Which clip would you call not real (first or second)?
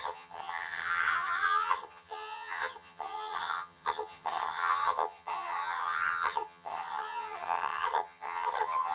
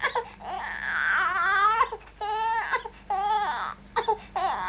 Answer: first